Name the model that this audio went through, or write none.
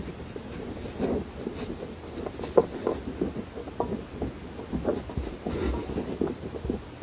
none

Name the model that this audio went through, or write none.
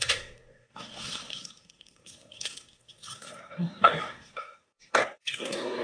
codec, SNAC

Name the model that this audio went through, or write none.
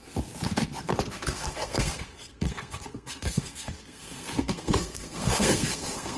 codec, SNAC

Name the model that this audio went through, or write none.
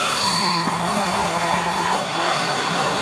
codec, SNAC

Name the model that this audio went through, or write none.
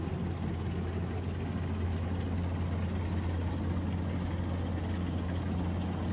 none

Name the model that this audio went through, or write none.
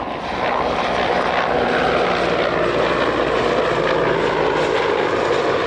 none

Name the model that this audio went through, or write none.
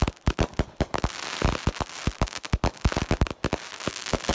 none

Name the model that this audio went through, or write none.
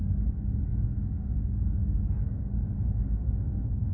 codec, SNAC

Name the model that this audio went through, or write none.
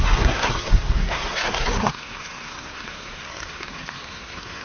codec, SNAC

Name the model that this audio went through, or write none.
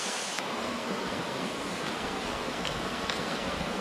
codec, SNAC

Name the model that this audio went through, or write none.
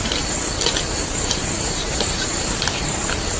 none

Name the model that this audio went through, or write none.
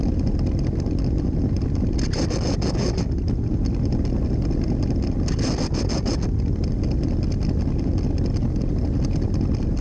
none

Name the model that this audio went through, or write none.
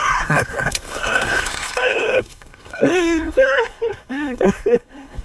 codec, SNAC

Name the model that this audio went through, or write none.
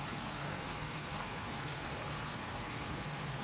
codec, SNAC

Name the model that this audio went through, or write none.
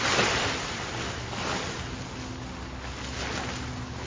none